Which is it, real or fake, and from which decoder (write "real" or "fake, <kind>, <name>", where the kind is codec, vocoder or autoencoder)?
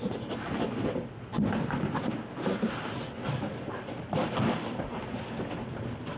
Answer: real